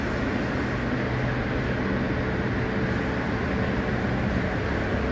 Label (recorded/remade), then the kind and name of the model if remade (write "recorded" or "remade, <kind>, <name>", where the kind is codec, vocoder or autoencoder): recorded